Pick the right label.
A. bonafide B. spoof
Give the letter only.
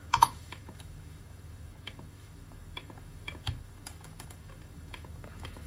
B